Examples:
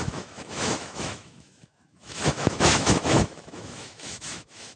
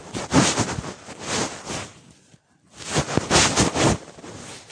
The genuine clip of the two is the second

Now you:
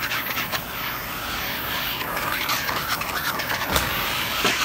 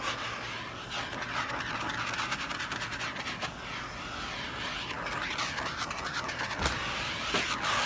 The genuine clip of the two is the second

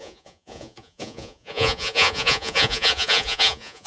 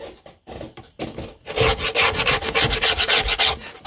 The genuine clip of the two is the second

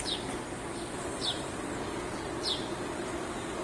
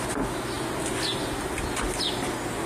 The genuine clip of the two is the second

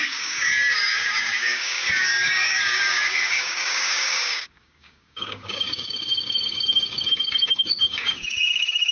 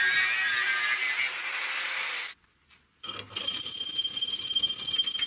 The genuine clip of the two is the second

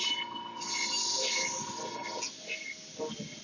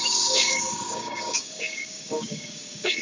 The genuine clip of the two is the first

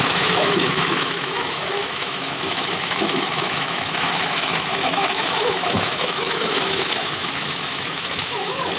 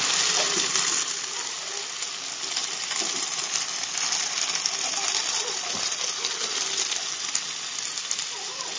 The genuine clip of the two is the second